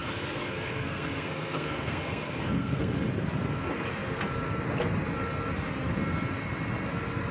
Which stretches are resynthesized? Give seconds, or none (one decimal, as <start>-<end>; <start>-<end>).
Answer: 0.0-3.1